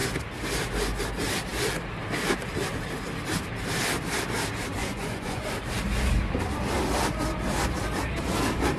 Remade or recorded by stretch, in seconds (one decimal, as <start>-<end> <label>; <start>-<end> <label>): 0.0-4.8 recorded; 4.8-5.5 remade; 5.5-8.8 recorded